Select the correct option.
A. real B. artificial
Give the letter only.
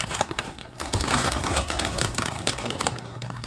B